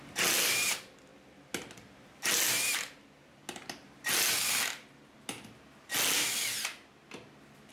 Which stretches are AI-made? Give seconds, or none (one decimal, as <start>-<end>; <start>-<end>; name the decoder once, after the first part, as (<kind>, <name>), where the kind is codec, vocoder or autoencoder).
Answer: none